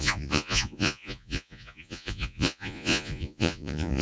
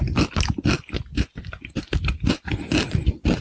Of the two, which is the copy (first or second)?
first